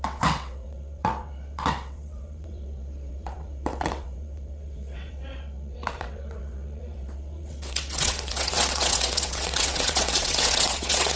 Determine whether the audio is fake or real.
fake